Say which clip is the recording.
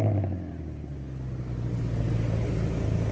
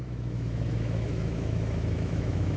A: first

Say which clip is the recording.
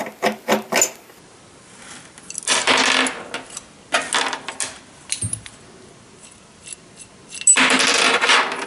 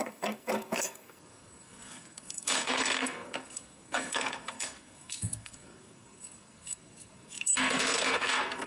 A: first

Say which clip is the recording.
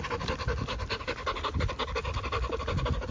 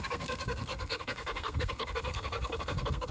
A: first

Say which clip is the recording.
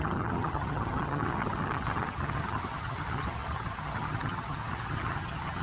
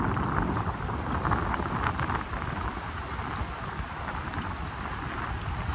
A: second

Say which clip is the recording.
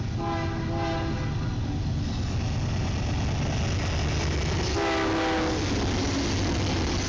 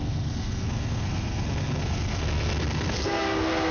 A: first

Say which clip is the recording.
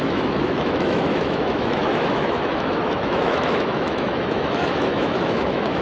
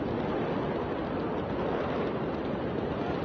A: second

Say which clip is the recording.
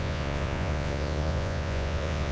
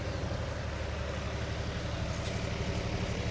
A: second